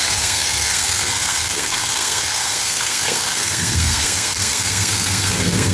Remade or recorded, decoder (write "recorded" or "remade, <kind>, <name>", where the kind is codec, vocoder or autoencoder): remade, codec, SNAC